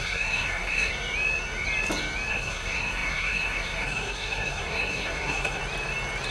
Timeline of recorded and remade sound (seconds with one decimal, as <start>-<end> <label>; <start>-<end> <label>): 0.0-0.9 remade; 0.9-2.3 recorded; 2.3-5.6 remade; 5.6-6.3 recorded